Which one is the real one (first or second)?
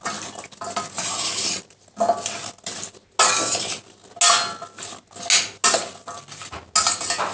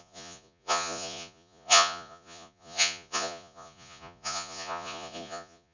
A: first